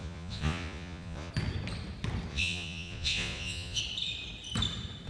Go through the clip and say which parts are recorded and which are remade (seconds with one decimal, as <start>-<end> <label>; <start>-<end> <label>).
0.0-1.3 remade; 1.3-2.3 recorded; 2.3-3.8 remade; 3.8-5.1 recorded